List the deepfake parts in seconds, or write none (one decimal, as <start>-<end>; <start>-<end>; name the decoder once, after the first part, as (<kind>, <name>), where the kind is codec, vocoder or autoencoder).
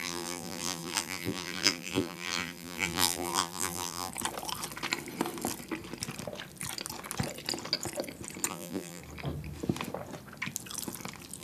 0.0-4.1 (vocoder, BigVGAN v2); 8.5-9.0